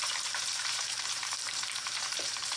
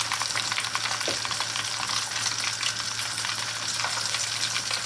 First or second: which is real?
second